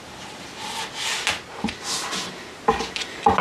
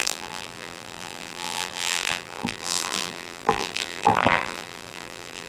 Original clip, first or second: first